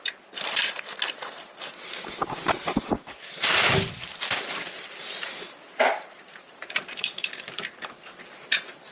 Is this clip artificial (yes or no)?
no